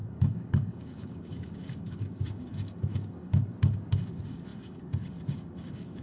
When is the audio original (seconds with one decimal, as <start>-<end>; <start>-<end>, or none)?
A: none